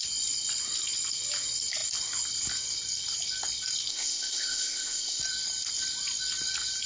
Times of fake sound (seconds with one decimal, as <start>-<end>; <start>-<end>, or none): 3.9-5.2